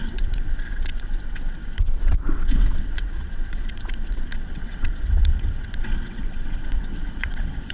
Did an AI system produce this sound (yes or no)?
yes